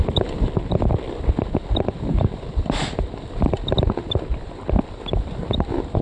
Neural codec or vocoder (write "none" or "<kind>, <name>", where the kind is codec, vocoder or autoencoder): none